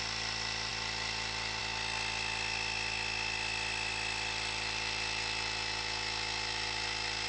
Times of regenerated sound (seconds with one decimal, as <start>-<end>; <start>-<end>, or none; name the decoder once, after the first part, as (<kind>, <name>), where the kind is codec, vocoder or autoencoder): none